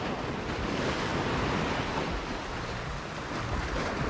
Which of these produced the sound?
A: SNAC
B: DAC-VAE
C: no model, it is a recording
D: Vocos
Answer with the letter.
C